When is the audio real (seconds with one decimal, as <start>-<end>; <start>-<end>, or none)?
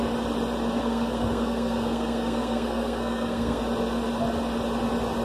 0.0-0.8; 3.6-5.2